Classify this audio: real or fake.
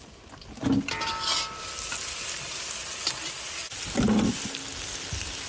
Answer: real